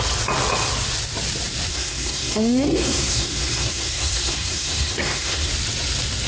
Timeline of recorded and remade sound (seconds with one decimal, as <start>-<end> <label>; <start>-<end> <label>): 0.0-1.7 recorded; 1.7-5.5 remade; 5.5-6.3 recorded